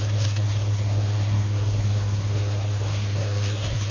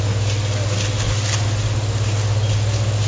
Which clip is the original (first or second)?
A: second